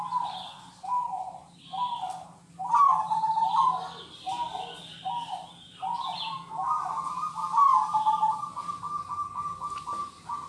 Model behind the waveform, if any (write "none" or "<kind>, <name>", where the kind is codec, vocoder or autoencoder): none